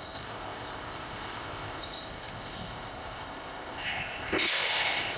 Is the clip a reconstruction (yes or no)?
yes